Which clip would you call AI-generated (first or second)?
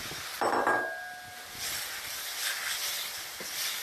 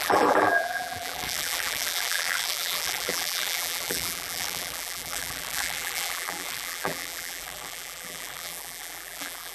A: second